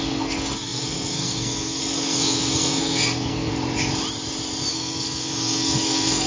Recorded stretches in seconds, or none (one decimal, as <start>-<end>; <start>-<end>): 3.5-4.7